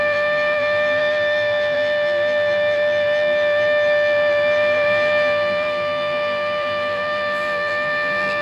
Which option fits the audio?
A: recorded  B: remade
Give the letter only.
B